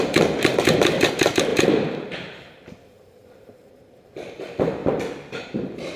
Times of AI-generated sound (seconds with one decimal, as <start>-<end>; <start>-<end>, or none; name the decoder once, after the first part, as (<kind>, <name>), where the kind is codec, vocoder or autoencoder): 0.0-4.8 (vocoder, BigVGAN v2); 5.3-6.0